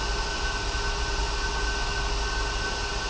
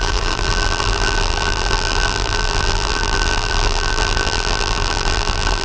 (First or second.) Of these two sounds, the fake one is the second